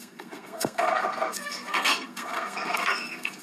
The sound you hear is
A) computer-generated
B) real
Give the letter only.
A